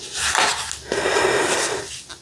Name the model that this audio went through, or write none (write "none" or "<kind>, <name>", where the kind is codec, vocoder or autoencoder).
none